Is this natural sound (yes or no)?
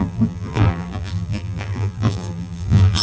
no